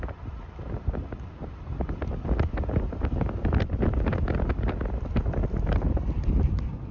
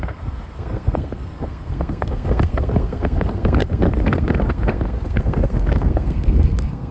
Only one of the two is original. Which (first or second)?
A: first